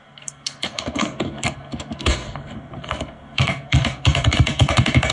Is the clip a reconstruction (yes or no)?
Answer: yes